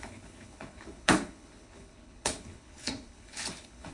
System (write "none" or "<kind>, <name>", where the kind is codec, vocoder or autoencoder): codec, HILCodec